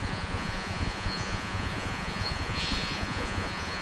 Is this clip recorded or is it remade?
remade